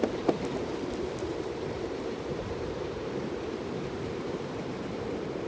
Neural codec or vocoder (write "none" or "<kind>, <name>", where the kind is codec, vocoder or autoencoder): vocoder, BigVGAN v2